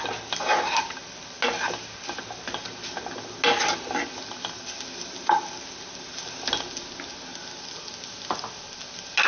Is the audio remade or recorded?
recorded